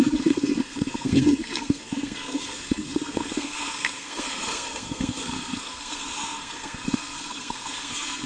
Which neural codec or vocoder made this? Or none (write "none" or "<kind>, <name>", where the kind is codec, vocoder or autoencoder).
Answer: codec, SNAC